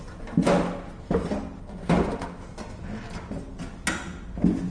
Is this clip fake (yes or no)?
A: no